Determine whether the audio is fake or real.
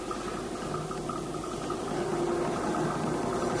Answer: real